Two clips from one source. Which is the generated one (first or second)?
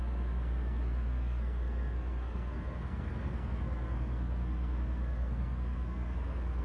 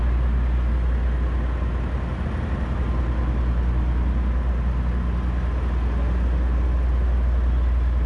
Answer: first